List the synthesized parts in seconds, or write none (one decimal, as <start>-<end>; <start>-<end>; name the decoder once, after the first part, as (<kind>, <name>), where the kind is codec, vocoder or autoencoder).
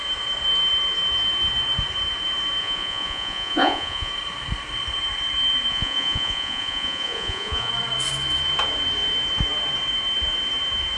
2.6-4.1 (vocoder, Vocos); 5.7-7.7